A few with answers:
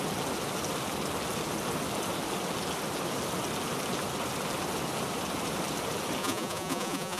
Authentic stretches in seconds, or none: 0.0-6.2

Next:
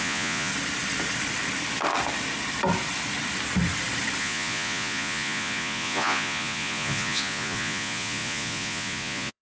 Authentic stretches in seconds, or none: 0.5-4.2

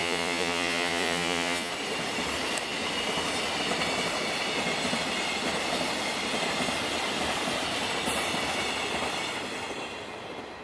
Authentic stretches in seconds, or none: 1.7-10.6

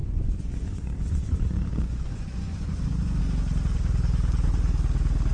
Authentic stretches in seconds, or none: 3.2-5.3

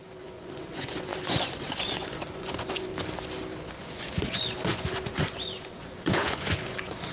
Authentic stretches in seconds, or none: 2.9-3.8

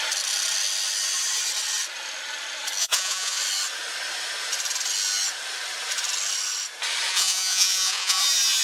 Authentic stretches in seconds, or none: 0.0-2.8; 3.4-7.1; 8.2-8.6

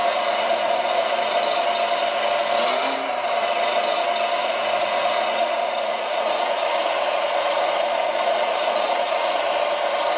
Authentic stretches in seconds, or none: 1.2-4.4; 9.4-10.2